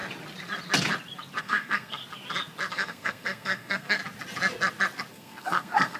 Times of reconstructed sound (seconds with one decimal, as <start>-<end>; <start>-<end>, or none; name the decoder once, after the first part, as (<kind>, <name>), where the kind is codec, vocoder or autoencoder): 1.4-2.0 (codec, SNAC); 2.7-4.0; 5.1-6.0